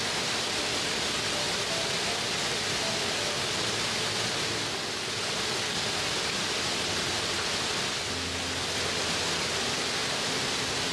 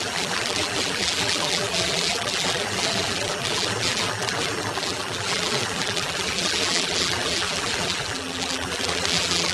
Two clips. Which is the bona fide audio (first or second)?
first